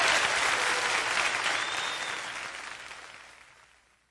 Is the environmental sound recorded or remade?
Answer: recorded